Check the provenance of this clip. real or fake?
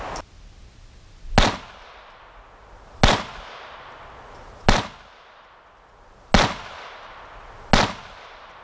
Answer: real